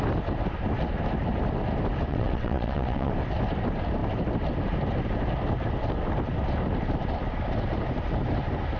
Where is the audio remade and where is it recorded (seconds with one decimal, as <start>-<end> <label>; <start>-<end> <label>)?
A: 0.0-2.1 recorded; 2.1-3.1 remade; 3.1-8.8 recorded

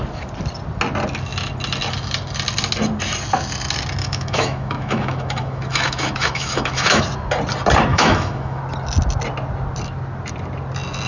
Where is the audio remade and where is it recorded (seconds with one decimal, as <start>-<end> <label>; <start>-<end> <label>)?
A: 0.0-4.0 recorded; 4.0-7.0 remade; 7.0-7.9 recorded; 7.9-8.6 remade; 8.6-11.1 recorded